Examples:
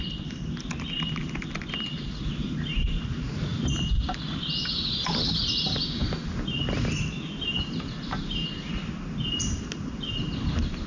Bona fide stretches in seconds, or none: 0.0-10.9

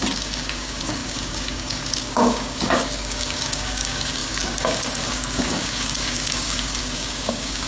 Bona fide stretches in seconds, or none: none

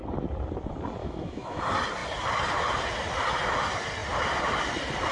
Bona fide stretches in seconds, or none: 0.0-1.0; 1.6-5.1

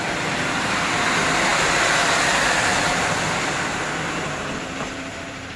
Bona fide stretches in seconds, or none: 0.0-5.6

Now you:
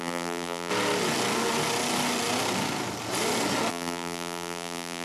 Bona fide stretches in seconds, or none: 0.7-3.7

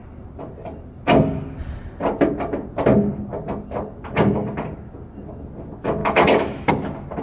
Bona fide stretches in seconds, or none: 0.0-6.0; 6.7-7.2